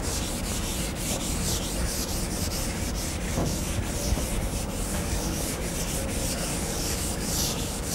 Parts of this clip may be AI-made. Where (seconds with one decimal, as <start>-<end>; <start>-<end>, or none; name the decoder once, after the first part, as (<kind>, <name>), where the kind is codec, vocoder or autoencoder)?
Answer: 3.4-3.9 (codec, DAC); 4.9-5.6; 6.5-7.9